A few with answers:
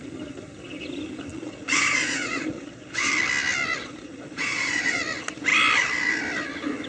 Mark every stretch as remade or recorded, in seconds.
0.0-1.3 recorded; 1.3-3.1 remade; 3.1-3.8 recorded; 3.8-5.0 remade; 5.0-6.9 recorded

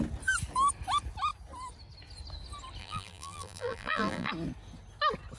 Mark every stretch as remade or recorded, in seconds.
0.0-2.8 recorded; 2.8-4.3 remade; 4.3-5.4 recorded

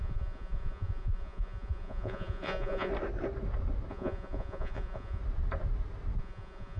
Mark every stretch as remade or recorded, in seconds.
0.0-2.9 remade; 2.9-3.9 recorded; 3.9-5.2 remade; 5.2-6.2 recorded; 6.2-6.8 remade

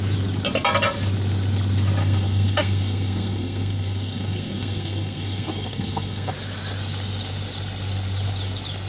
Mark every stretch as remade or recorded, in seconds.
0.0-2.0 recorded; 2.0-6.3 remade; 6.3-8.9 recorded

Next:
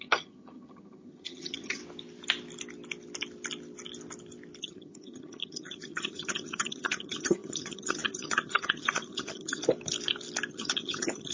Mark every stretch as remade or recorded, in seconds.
0.0-1.8 remade; 1.8-4.6 recorded; 4.6-9.6 remade; 9.6-10.5 recorded; 10.5-11.3 remade

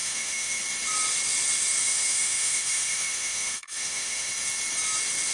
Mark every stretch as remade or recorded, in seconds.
0.0-0.6 remade; 0.6-1.8 recorded; 1.8-4.3 remade; 4.3-5.3 recorded

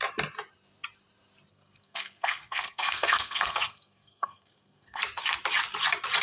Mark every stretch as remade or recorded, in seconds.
0.0-1.5 recorded; 1.5-5.0 remade; 5.0-6.2 recorded

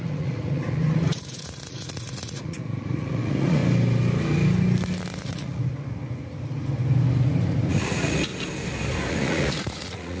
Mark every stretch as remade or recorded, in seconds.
0.0-3.6 remade; 3.6-5.2 recorded; 5.2-5.7 remade; 5.7-7.7 recorded; 7.7-8.3 remade; 8.3-9.1 recorded; 9.1-10.2 remade